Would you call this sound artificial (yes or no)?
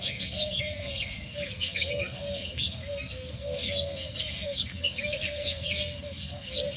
yes